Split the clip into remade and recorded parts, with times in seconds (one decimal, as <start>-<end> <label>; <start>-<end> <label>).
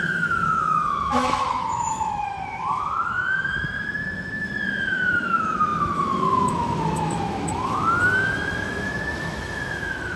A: 0.0-10.2 remade